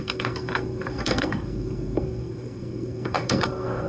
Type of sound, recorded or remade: remade